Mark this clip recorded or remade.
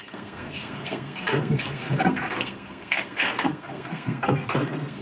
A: remade